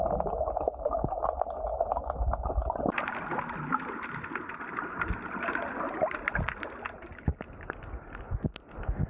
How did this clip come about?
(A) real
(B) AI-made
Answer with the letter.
A